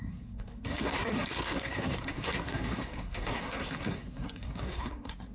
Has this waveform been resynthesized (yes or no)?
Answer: yes